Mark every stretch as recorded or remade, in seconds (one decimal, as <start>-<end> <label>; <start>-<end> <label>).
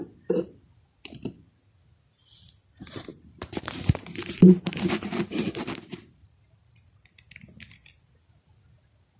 0.0-3.1 recorded; 3.1-7.2 remade; 7.2-9.2 recorded